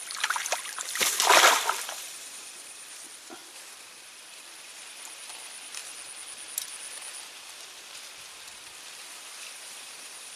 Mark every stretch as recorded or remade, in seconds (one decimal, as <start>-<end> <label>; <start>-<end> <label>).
0.0-5.8 remade; 5.8-7.4 recorded; 7.4-10.4 remade

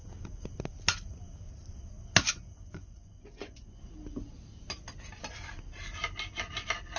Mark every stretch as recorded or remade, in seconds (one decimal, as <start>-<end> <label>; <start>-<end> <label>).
0.0-2.3 recorded; 2.3-3.8 remade; 3.8-7.0 recorded

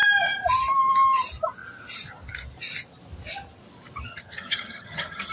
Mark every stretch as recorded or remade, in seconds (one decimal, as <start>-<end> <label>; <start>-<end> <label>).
0.0-4.1 recorded; 4.1-5.3 remade

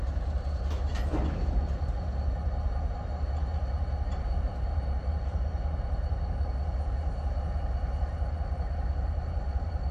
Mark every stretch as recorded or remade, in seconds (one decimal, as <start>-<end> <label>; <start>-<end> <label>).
0.0-0.9 remade; 0.9-1.7 recorded; 1.7-9.9 remade

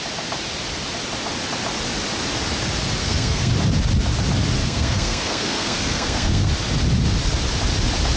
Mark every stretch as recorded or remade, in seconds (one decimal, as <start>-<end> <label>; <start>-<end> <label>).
0.0-3.0 recorded; 3.0-3.5 remade; 3.5-4.6 recorded; 4.6-6.5 remade; 6.5-8.2 recorded

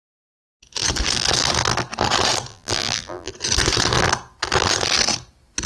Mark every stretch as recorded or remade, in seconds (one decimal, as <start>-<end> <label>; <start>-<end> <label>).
0.0-2.5 recorded; 2.5-3.3 remade; 3.3-5.7 recorded

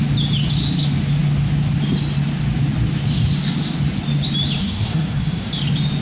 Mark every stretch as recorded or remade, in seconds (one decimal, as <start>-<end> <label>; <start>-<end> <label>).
0.0-4.6 recorded; 4.6-5.5 remade; 5.5-6.0 recorded